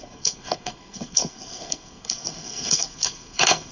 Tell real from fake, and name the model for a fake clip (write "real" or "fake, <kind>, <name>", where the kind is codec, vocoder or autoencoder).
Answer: fake, codec, SNAC